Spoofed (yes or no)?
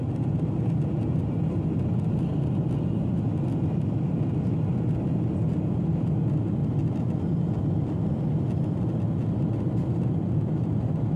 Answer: no